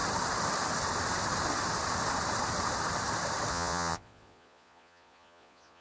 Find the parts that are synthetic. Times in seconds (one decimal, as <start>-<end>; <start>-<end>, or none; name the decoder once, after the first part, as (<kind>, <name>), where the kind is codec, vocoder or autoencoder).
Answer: 3.5-5.8 (vocoder, Vocos)